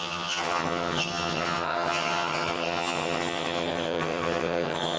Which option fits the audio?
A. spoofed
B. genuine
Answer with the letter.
A